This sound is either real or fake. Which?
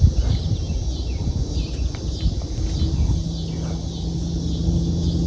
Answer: real